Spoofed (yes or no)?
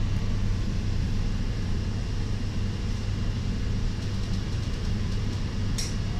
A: yes